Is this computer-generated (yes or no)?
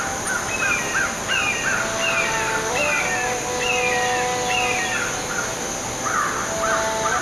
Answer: no